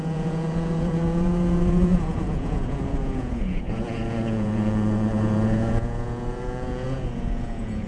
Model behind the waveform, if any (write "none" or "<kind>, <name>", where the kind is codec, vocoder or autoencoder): vocoder, Vocos